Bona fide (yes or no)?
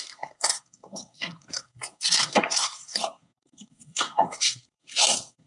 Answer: no